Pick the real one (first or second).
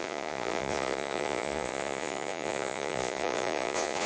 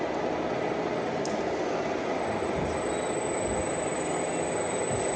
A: second